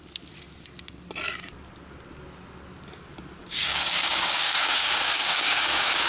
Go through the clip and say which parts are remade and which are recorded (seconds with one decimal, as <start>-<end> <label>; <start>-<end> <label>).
0.0-3.4 recorded; 3.4-6.1 remade